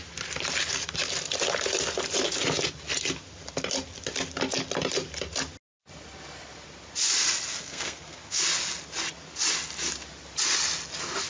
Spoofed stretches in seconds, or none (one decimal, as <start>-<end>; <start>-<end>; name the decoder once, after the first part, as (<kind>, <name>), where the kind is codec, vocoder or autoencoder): 7.5-8.4 (codec, SNAC)